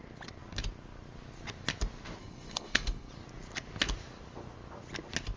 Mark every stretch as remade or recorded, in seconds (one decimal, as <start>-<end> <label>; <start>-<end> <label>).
0.0-2.2 recorded; 2.2-3.1 remade; 3.1-5.4 recorded